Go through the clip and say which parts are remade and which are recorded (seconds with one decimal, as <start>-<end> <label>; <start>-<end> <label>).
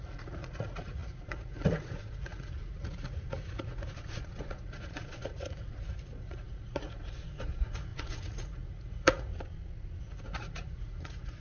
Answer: 0.0-9.3 remade; 9.3-10.0 recorded; 10.0-11.4 remade